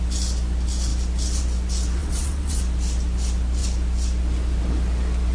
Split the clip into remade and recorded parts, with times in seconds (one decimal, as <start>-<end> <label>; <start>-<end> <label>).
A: 0.0-2.0 recorded; 2.0-2.6 remade; 2.6-5.3 recorded